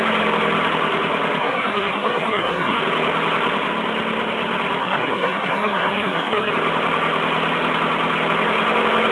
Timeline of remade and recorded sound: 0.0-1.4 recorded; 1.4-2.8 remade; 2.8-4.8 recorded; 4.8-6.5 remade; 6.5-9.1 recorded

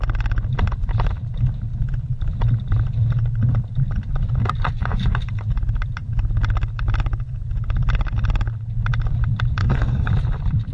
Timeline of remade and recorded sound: 0.0-9.6 recorded; 9.6-10.1 remade; 10.1-10.7 recorded

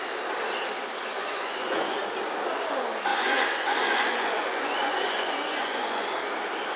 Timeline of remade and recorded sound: 0.0-1.1 recorded; 1.1-2.0 remade; 2.0-3.1 recorded; 3.1-6.1 remade; 6.1-6.8 recorded

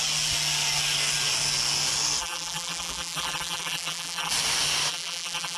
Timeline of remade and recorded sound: 0.0-2.2 recorded; 2.2-4.3 remade; 4.3-4.9 recorded; 4.9-5.6 remade

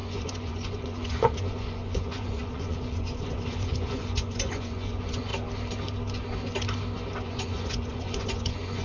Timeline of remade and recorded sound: 0.0-5.3 remade; 5.3-7.2 recorded; 7.2-8.8 remade